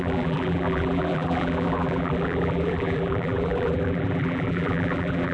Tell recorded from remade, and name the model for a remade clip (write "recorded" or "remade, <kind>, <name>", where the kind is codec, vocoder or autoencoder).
remade, vocoder, BigVGAN v2